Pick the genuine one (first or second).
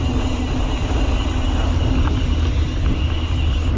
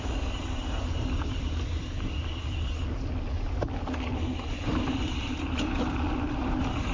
first